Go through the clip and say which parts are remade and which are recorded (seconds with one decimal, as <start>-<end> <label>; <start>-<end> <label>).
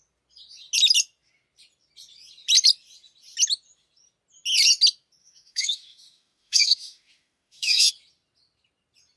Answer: 0.0-5.2 recorded; 5.2-7.9 remade; 7.9-9.2 recorded